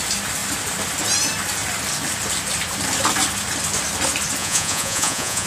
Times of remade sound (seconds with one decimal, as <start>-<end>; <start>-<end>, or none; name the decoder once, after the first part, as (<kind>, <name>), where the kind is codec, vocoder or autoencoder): 4.4-5.5 (vocoder, Vocos)